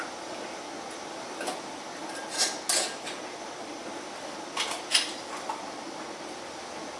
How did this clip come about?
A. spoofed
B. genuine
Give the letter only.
B